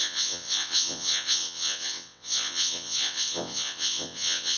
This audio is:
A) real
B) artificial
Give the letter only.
B